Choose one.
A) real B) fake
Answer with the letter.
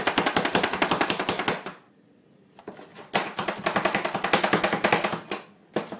A